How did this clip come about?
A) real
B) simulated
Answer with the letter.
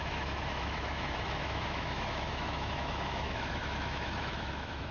B